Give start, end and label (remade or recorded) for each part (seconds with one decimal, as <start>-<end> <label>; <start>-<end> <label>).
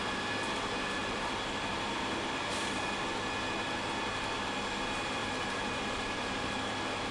0.0-1.0 recorded; 1.0-2.8 remade; 2.8-5.2 recorded; 5.2-6.6 remade; 6.6-7.1 recorded